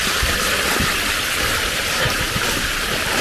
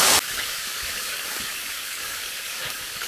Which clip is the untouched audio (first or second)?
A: first